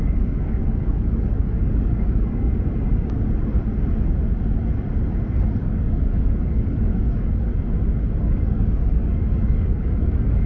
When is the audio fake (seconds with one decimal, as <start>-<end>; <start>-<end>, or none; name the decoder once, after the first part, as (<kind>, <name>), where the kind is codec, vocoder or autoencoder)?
0.0-2.5 (codec, DAC); 5.6-7.5; 8.2-10.5